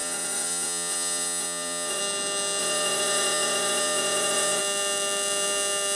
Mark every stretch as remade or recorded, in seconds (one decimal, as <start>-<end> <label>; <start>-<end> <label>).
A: 0.0-2.0 remade; 2.0-2.6 recorded; 2.6-4.6 remade; 4.6-6.0 recorded

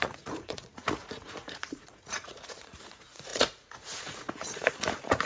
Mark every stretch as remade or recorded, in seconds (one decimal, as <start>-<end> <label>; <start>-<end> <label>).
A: 0.0-5.3 remade